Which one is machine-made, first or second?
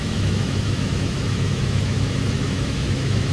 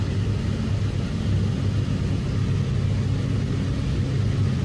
first